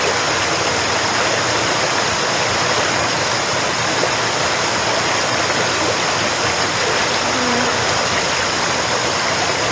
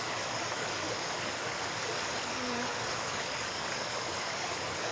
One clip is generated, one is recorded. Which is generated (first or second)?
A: second